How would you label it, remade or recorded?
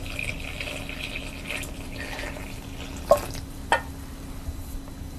recorded